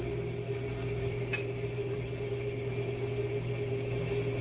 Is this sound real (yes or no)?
yes